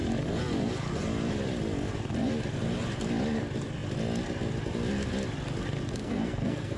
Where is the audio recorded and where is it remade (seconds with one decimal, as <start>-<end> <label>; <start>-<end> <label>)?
0.0-6.0 recorded; 6.0-6.8 remade